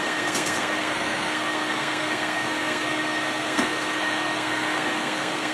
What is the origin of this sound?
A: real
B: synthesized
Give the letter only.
B